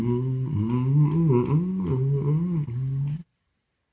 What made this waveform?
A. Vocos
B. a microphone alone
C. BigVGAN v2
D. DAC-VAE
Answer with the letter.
B